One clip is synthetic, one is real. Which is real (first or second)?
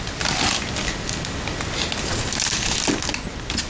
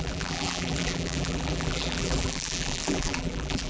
first